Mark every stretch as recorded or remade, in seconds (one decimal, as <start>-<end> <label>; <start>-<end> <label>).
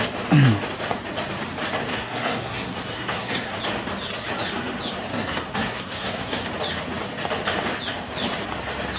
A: 0.0-1.9 recorded; 1.9-3.6 remade; 3.6-5.1 recorded; 5.1-6.5 remade; 6.5-9.0 recorded